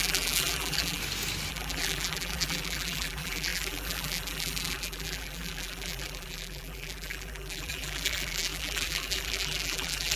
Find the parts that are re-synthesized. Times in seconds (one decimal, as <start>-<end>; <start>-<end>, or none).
0.0-1.0; 1.5-10.2